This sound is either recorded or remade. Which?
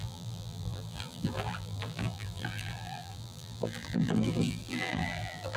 remade